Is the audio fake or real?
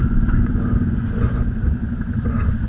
fake